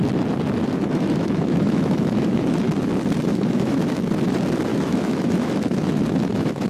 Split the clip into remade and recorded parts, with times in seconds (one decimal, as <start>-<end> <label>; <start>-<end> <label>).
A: 0.0-0.6 recorded; 0.6-2.9 remade; 2.9-3.3 recorded; 3.3-4.0 remade; 4.0-4.7 recorded; 4.7-6.7 remade